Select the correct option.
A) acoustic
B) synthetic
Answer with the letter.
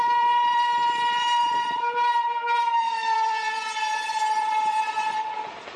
B